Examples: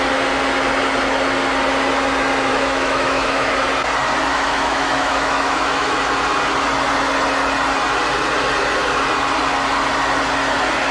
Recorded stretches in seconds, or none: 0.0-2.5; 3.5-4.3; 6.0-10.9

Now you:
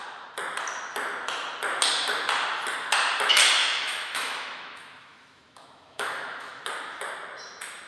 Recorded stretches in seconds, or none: 0.0-3.6; 6.6-7.9

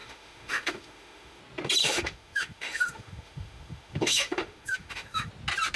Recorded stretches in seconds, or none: 1.4-1.8; 5.3-5.8

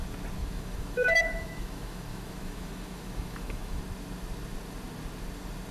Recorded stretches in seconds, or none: 0.0-0.4; 3.8-5.7

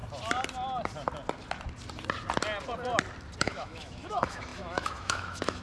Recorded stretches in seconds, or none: 0.0-3.4

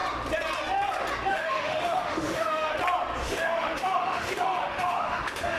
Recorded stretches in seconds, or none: 0.0-1.3; 2.7-3.2